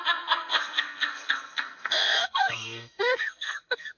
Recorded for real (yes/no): no